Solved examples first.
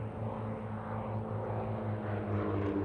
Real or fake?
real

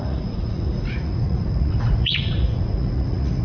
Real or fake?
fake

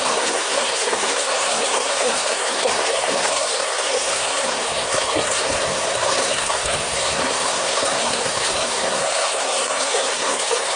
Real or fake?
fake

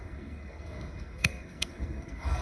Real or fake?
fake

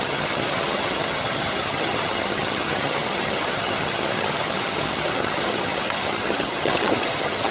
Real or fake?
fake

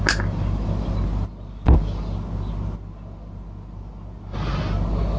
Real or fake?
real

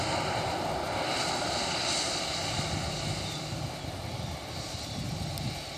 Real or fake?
real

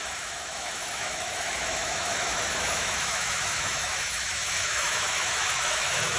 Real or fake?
fake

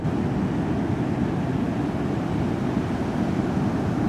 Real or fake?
real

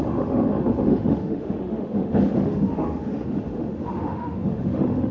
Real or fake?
fake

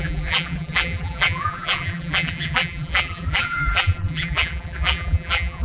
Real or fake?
fake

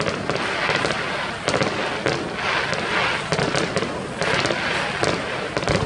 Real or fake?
real